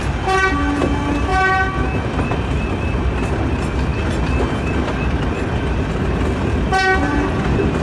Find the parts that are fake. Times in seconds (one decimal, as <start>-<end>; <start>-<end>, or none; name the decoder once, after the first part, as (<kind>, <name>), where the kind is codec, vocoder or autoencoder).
7.1-7.8 (vocoder, BigVGAN v2)